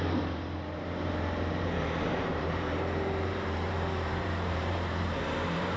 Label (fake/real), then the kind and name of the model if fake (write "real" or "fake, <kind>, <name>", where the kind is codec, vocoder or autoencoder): fake, vocoder, BigVGAN v2